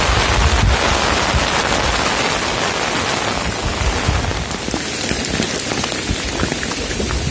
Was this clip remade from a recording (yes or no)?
no